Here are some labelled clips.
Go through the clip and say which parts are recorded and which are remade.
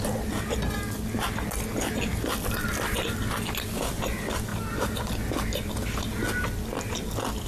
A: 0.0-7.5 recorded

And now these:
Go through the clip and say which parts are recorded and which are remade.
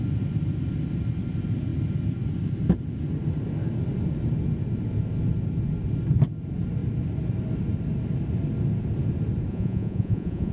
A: 0.0-9.5 recorded; 9.5-10.5 remade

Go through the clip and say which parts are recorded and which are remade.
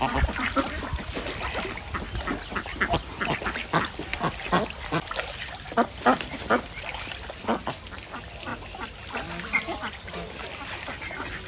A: 0.0-11.5 recorded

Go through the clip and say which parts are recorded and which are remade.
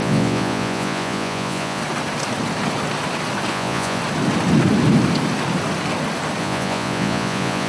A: 0.0-1.8 remade; 1.8-3.5 recorded; 3.5-4.0 remade; 4.0-6.4 recorded; 6.4-7.7 remade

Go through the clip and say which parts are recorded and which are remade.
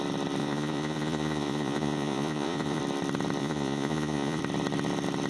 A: 0.0-0.4 recorded; 0.4-2.8 remade; 2.8-3.4 recorded; 3.4-4.4 remade; 4.4-5.3 recorded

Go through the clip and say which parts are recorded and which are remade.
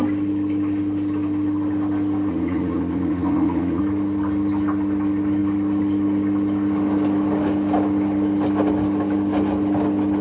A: 0.0-2.3 recorded; 2.3-3.8 remade; 3.8-10.2 recorded